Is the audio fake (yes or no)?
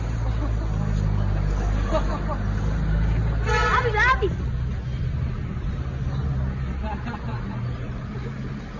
no